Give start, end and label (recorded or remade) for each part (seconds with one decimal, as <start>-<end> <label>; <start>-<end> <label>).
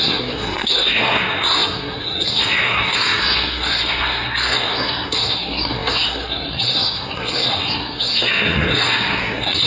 0.0-9.7 remade